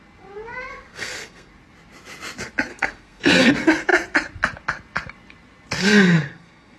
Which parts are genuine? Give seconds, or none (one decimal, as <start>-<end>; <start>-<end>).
0.0-0.9; 1.5-2.7; 3.5-5.8

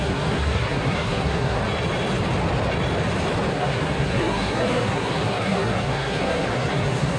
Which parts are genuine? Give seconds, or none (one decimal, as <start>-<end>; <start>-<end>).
1.6-3.5

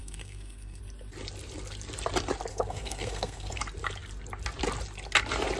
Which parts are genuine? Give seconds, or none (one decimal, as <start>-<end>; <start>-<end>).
0.8-2.5; 3.6-5.6

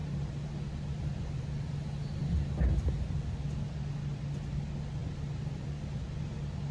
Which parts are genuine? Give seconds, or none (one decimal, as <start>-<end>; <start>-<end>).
0.0-6.7